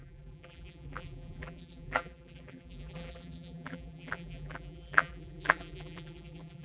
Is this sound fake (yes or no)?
yes